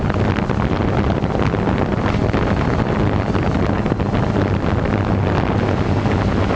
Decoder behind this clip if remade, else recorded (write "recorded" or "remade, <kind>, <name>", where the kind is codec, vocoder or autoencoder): recorded